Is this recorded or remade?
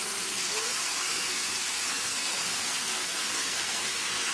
remade